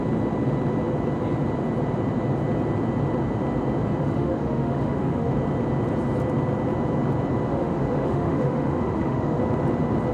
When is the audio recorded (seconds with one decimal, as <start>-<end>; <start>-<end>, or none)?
0.0-4.0; 5.3-7.5; 9.4-10.1